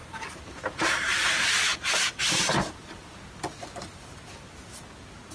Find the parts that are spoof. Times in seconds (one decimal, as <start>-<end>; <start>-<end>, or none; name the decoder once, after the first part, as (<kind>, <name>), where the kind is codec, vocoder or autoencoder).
0.0-3.2 (vocoder, BigVGAN v2)